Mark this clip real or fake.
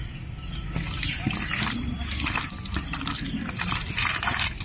real